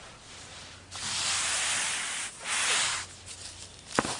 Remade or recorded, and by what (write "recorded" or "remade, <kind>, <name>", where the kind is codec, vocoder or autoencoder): recorded